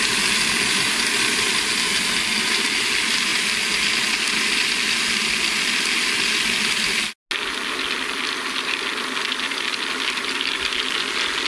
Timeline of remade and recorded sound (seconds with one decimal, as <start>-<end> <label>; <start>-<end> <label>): 0.0-11.5 recorded